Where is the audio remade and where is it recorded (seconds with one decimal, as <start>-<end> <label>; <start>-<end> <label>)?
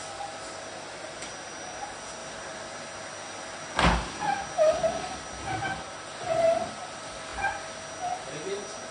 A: 0.0-8.9 recorded